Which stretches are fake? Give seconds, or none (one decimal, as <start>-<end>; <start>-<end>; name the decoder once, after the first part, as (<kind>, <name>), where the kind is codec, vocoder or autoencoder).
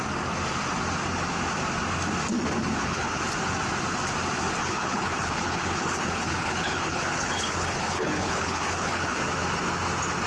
2.7-3.2 (codec, HILCodec); 4.6-9.2